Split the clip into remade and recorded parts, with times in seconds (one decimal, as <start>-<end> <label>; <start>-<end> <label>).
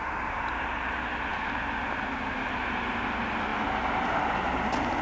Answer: 0.0-5.0 recorded